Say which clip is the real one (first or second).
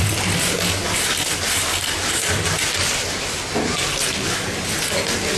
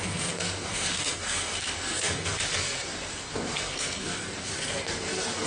first